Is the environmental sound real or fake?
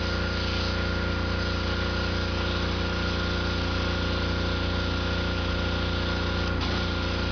real